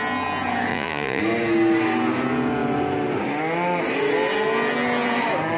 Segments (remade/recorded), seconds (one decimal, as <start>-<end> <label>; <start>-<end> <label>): 0.0-0.7 recorded; 0.7-1.2 remade; 1.2-5.6 recorded